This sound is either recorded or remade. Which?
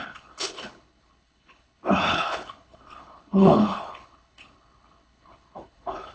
remade